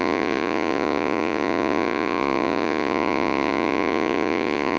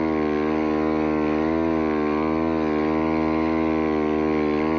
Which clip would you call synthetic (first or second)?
first